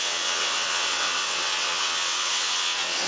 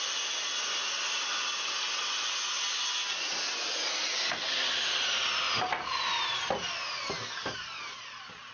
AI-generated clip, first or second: first